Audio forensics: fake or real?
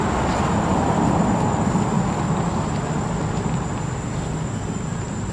real